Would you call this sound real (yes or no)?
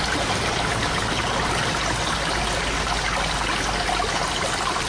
yes